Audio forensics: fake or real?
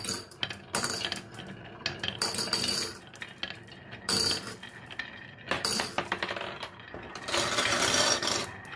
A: real